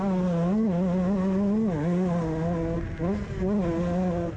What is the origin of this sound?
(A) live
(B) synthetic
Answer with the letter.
A